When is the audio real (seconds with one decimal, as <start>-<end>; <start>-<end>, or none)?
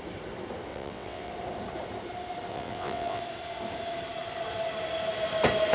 0.0-0.7; 1.3-2.5; 3.2-5.7